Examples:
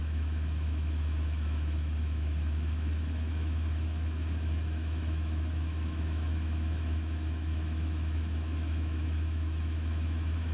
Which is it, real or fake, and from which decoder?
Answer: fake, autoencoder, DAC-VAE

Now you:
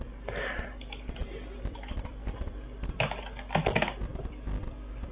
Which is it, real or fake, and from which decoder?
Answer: real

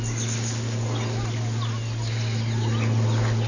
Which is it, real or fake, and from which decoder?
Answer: real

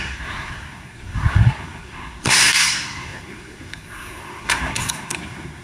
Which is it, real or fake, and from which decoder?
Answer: fake, codec, SNAC